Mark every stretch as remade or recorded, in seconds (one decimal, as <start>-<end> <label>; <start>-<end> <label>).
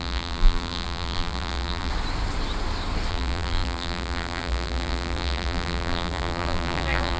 0.0-1.9 remade; 1.9-3.1 recorded; 3.1-7.2 remade